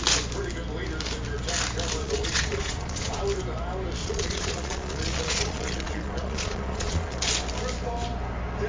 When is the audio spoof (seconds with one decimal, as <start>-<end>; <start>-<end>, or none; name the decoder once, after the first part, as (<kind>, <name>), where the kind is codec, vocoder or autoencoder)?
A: 2.0-3.2 (vocoder, Vocos); 4.0-7.2